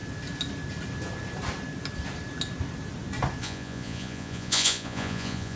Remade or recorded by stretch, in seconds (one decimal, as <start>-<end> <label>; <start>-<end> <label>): 0.0-3.4 recorded; 3.4-5.6 remade